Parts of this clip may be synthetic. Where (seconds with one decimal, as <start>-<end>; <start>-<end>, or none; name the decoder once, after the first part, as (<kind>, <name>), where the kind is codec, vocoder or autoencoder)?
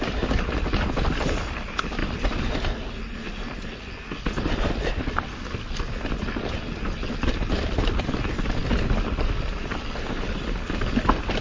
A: 0.0-8.6 (vocoder, BigVGAN v2); 9.2-11.4